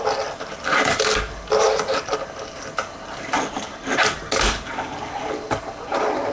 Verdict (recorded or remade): recorded